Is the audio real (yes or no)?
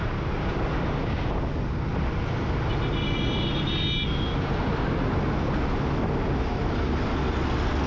yes